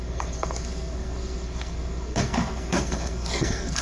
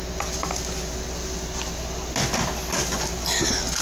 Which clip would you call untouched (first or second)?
second